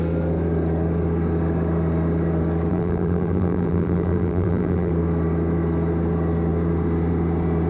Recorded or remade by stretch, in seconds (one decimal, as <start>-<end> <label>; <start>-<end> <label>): 0.0-2.7 recorded; 2.7-4.9 remade; 4.9-7.7 recorded